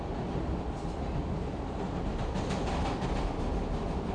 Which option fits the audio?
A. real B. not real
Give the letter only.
A